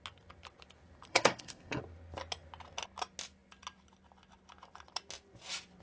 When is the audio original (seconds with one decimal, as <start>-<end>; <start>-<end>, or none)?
0.0-1.1; 1.8-5.8